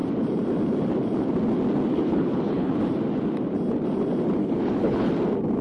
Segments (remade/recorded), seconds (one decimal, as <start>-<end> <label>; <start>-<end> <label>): 0.0-1.9 recorded; 1.9-2.7 remade; 2.7-4.4 recorded; 4.4-5.1 remade; 5.1-5.6 recorded